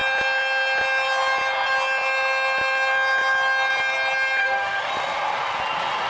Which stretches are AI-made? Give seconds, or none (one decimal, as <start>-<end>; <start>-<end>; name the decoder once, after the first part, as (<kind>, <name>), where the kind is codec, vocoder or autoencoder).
4.4-4.9 (autoencoder, DAC-VAE)